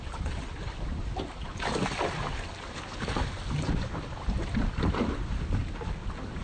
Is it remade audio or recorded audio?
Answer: recorded